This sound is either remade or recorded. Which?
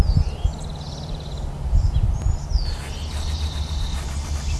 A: recorded